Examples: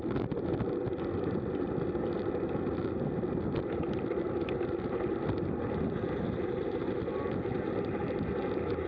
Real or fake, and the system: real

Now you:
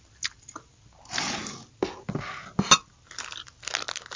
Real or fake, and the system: real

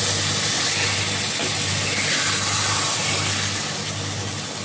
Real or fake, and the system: real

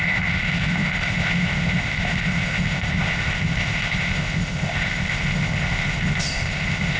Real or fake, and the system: fake, codec, ZipCodec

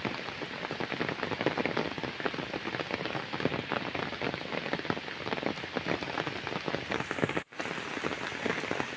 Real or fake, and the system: real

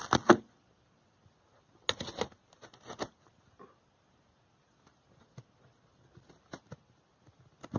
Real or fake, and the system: real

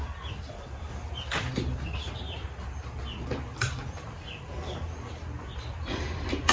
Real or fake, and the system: real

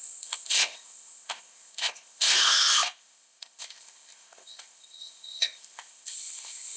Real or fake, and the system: fake, codec, ZipCodec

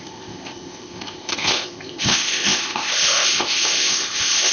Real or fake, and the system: fake, codec, ZipCodec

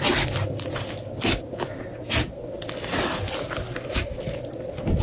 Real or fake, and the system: real